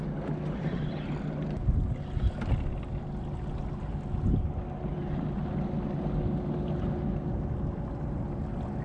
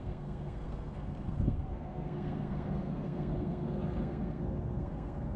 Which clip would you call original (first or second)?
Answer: first